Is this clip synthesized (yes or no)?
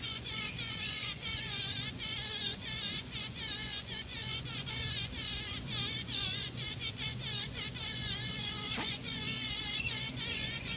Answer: yes